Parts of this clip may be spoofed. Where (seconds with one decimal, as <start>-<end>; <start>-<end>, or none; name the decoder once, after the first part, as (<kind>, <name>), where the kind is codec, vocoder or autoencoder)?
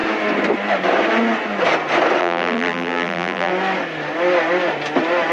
2.2-3.5 (vocoder, BigVGAN v2)